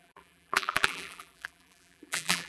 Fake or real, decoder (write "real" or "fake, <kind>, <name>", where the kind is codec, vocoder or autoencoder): fake, vocoder, BigVGAN v2